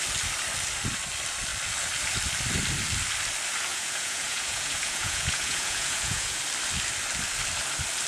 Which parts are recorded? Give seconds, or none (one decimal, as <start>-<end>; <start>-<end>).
0.0-3.7; 6.4-8.1